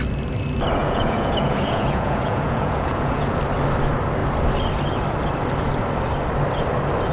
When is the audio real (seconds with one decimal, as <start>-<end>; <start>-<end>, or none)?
0.0-0.8; 3.4-7.1